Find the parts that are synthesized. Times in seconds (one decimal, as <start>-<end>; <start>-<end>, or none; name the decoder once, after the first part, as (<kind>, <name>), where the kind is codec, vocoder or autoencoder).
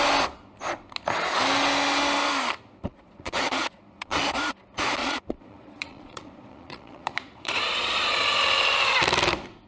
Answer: 2.9-4.2 (vocoder, Vocos); 5.0-8.3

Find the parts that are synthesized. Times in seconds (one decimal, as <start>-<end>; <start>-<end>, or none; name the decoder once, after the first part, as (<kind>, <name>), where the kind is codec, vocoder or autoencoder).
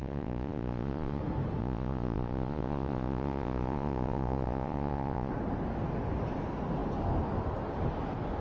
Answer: 0.0-1.2 (vocoder, Vocos); 1.6-5.3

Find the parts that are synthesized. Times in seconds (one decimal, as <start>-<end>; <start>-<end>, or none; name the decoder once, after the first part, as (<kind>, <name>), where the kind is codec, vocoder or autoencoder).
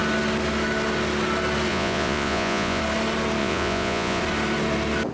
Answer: 1.7-2.8 (vocoder, Vocos); 3.4-4.2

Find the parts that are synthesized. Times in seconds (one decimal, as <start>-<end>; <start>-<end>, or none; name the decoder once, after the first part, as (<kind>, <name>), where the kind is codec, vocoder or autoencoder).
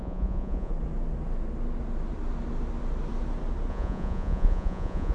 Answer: 0.0-0.7 (vocoder, Vocos); 3.7-5.1